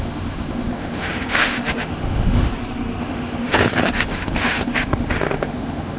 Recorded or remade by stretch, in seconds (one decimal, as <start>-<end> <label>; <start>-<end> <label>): 0.0-2.5 remade; 2.5-3.0 recorded; 3.0-6.0 remade